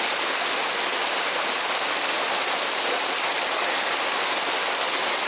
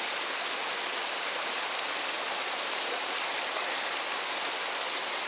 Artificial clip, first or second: second